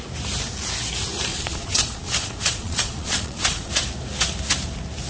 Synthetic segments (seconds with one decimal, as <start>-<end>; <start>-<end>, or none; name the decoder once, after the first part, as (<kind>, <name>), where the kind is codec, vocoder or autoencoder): 1.3-3.7 (vocoder, Vocos)